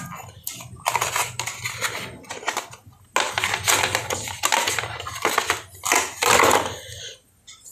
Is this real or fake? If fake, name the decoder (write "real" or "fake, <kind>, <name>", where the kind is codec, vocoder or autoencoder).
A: real